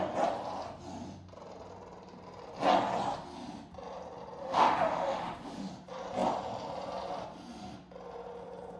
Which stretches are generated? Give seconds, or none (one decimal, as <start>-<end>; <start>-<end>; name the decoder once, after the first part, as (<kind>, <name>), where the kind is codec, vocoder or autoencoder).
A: 4.4-5.7 (autoencoder, DAC-VAE)